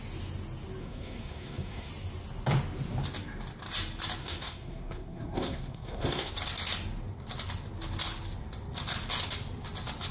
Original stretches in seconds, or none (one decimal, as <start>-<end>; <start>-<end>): 0.0-0.8; 1.9-4.2; 6.3-10.1